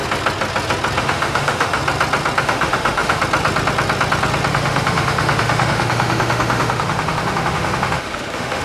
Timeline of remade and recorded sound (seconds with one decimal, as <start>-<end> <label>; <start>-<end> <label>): 0.0-1.0 recorded; 1.0-1.8 remade; 1.8-2.4 recorded; 2.4-3.2 remade; 3.2-4.5 recorded; 4.5-8.6 remade